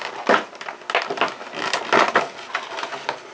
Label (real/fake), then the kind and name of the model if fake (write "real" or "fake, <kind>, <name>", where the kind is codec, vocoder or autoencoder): real